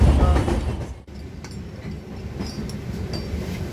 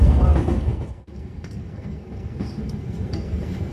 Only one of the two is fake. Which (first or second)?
second